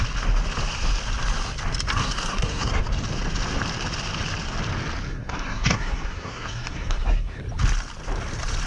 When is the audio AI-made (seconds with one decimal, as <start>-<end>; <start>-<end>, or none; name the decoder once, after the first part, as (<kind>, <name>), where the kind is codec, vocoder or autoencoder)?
2.0-2.8 (codec, SNAC); 5.1-7.4